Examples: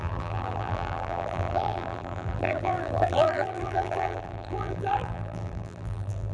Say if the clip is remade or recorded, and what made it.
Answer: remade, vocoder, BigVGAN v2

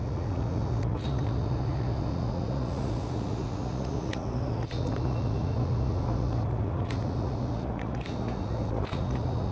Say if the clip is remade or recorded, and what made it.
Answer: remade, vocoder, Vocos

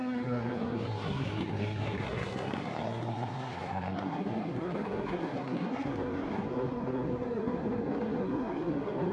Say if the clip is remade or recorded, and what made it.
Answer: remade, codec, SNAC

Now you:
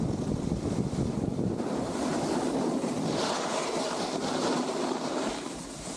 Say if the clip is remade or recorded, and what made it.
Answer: recorded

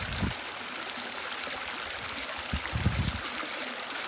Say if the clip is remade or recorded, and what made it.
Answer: recorded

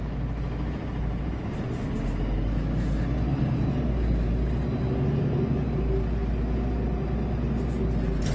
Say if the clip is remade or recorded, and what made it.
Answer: recorded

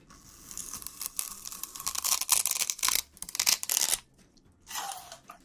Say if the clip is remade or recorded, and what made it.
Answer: recorded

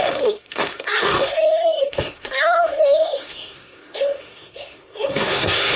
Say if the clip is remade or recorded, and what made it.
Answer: remade, codec, SNAC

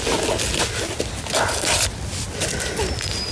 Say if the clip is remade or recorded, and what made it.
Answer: recorded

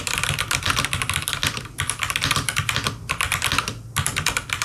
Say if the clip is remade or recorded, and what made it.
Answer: recorded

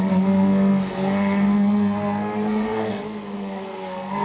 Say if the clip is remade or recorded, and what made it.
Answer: remade, codec, SNAC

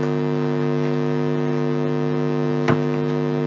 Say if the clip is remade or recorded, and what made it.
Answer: recorded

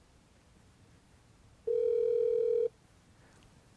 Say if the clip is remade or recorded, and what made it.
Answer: remade, vocoder, BigVGAN v2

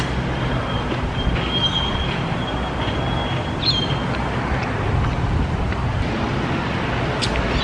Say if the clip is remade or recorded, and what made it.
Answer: recorded